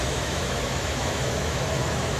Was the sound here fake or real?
fake